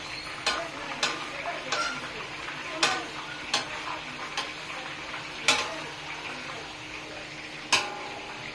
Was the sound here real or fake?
real